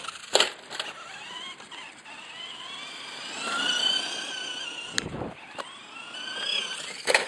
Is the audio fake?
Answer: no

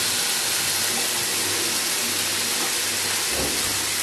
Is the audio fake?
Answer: no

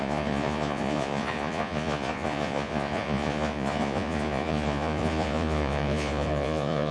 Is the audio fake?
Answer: yes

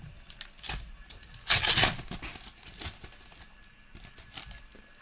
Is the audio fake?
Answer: no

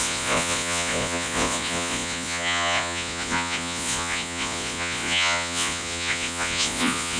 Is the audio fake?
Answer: yes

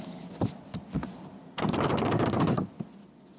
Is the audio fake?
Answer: no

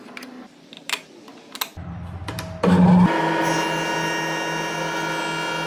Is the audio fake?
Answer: no